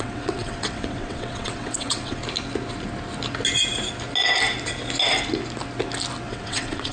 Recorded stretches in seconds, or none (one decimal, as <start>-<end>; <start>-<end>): 2.2-6.3